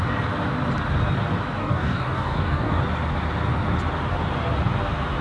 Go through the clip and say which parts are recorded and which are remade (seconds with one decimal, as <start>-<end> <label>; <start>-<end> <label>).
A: 0.0-1.6 recorded; 1.6-2.8 remade; 2.8-5.2 recorded